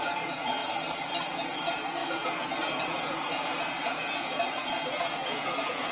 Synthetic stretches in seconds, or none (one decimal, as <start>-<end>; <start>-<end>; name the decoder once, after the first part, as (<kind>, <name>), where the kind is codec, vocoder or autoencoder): 0.0-0.6 (vocoder, Vocos); 1.3-5.9